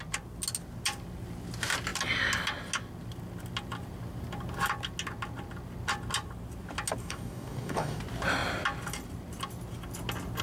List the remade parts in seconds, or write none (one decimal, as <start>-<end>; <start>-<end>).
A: 7.0-8.0